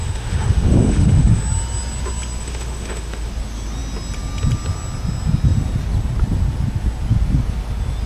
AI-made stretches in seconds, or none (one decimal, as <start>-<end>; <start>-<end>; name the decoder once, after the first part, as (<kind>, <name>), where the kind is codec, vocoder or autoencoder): 0.0-1.4 (autoencoder, DAC-VAE); 2.4-3.3

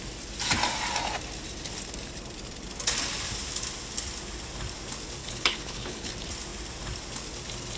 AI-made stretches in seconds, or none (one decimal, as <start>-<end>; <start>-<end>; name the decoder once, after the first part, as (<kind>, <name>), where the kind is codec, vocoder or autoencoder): 5.2-6.1 (codec, HILCodec)

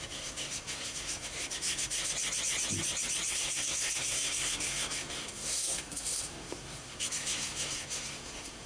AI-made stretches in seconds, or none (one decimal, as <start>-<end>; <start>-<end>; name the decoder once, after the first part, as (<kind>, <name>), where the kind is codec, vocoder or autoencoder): 0.0-2.1 (codec, SNAC); 3.3-8.7

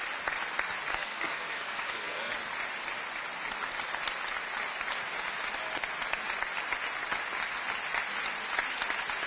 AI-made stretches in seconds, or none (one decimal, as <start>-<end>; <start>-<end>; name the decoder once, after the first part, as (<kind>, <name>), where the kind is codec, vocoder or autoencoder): 0.9-2.3 (codec, SNAC)

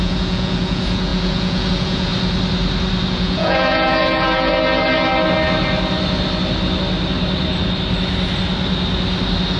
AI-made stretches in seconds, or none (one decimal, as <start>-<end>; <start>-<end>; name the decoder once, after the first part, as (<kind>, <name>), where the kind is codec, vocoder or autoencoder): 0.0-2.1 (vocoder, Vocos); 3.1-4.5